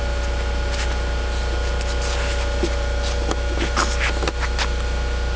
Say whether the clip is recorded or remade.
recorded